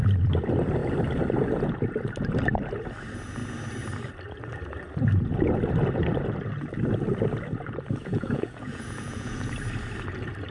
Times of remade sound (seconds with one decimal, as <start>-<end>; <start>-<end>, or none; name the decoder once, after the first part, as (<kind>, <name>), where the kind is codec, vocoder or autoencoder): 8.0-9.5 (vocoder, Vocos)